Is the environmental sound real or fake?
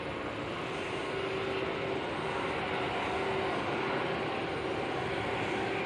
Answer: real